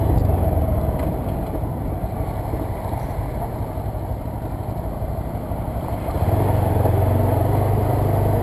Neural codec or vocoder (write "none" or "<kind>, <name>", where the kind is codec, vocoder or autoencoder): none